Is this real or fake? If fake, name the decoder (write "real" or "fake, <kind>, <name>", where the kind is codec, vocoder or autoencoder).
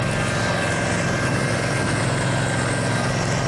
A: real